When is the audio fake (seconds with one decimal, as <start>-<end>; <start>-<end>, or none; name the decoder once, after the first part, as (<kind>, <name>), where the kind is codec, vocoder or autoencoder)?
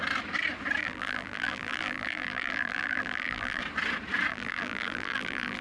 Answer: 0.8-3.6 (vocoder, BigVGAN v2); 4.3-5.6